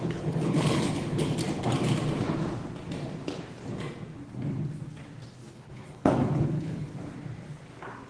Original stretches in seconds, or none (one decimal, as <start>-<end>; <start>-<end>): 1.4-5.5; 6.9-8.1